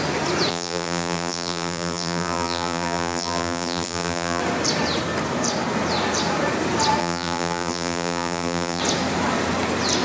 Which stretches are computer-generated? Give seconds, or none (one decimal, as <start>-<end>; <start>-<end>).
0.5-4.4; 7.0-8.8